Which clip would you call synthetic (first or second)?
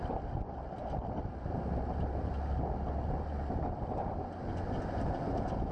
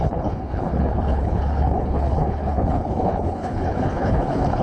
second